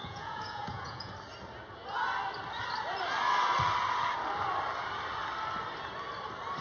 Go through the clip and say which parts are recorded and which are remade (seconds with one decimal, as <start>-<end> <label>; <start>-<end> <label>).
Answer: 0.0-1.1 remade; 1.1-6.6 recorded